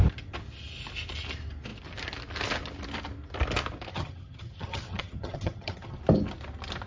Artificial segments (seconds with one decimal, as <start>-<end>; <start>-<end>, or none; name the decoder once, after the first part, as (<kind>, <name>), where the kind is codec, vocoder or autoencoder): 3.9-6.0 (vocoder, HiFi-GAN)